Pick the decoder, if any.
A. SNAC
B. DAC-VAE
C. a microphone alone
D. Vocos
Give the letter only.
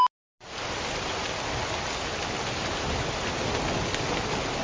C